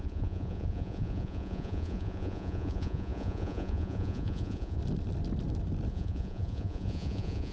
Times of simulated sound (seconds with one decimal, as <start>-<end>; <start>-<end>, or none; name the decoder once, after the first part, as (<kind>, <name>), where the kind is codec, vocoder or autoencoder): 0.0-4.8 (vocoder, Vocos); 5.9-7.5

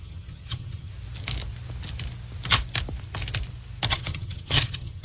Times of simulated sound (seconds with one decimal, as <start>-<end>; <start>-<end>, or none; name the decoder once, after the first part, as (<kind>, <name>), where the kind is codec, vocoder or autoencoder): 0.0-0.9 (vocoder, HiFi-GAN); 3.9-5.0

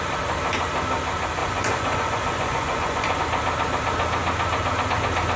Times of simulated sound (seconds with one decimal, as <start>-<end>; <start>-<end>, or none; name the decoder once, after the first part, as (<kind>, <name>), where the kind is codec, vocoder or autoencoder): 1.4-3.2 (vocoder, Vocos)

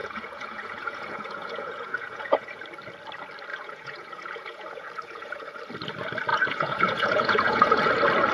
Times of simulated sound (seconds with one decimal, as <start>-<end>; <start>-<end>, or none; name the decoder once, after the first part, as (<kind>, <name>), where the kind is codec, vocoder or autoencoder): 0.0-2.6 (vocoder, Vocos); 3.5-5.5; 6.3-7.9